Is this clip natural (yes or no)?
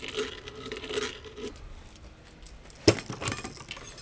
yes